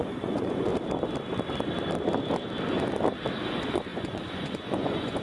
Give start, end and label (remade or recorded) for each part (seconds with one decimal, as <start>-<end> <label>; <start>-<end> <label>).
0.0-0.7 remade; 0.7-3.5 recorded; 3.5-5.2 remade